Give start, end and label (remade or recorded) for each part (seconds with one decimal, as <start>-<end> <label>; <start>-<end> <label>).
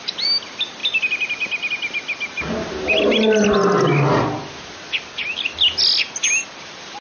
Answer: 0.0-7.0 recorded